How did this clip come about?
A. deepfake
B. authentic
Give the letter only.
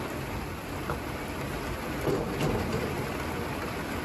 B